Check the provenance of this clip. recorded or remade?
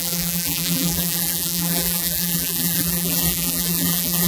remade